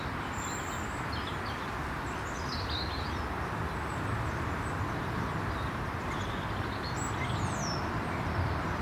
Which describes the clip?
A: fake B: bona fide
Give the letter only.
B